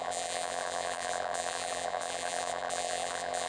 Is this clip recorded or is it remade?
remade